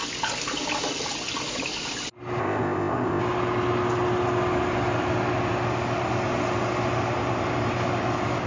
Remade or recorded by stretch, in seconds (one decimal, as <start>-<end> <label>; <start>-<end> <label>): 0.0-2.4 recorded; 2.4-3.2 remade; 3.2-8.5 recorded